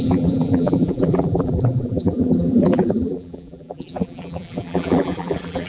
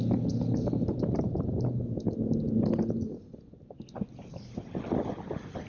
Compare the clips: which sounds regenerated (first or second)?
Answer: first